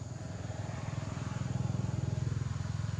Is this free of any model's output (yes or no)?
yes